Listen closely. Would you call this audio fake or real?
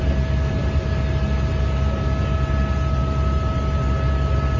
real